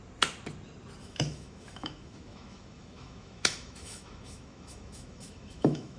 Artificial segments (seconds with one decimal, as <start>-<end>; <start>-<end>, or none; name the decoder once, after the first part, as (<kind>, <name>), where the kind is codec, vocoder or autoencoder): 1.0-6.0 (autoencoder, DAC-VAE)